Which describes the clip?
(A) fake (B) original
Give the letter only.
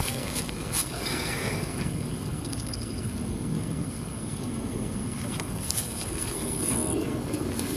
A